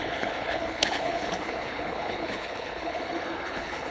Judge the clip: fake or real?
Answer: fake